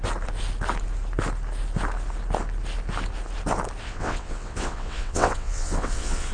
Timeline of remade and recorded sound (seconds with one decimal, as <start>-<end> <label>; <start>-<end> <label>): 0.0-3.8 recorded; 3.8-6.3 remade